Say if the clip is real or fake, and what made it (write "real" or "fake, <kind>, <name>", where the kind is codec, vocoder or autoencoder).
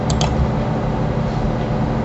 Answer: real